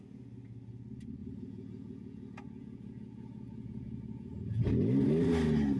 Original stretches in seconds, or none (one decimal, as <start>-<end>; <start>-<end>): 0.0-1.2; 4.7-5.8